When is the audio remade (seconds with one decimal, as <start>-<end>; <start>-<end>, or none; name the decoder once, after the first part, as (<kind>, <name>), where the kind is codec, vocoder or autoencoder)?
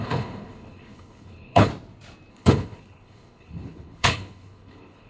0.0-1.7 (codec, HILCodec); 2.3-5.1